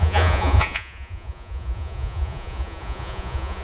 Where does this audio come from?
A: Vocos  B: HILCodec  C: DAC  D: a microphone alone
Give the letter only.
A